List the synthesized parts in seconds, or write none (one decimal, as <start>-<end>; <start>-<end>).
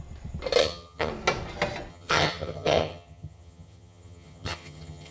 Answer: 0.6-1.1; 1.9-5.1